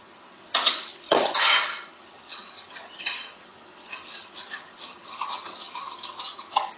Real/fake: fake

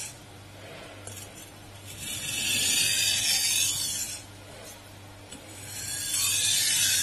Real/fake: real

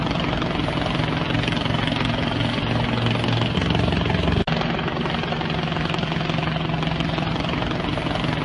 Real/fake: real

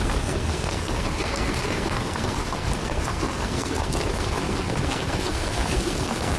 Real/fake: fake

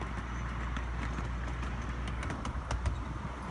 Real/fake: real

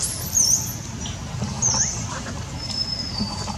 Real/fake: real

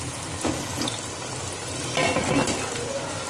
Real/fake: real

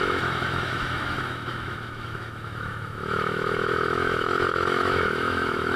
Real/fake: fake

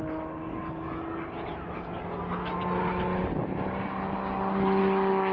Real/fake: real